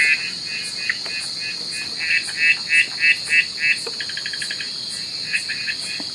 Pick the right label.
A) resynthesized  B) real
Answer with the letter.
B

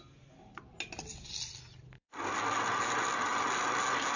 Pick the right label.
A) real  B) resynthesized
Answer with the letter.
A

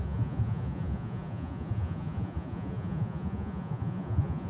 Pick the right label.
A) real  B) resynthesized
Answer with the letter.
B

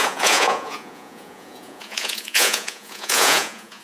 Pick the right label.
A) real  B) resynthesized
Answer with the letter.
B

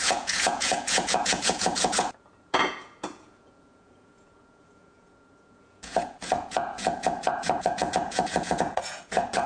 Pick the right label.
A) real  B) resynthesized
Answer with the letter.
B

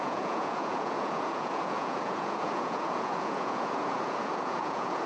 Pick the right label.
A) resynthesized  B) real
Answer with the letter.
A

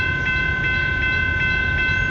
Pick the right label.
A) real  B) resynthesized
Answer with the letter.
A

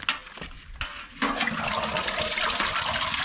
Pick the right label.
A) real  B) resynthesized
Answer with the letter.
A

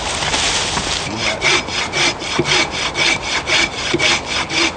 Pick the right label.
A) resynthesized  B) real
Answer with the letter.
B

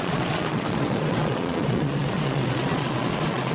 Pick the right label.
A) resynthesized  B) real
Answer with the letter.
A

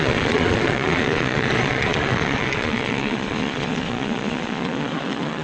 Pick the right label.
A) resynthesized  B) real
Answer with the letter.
A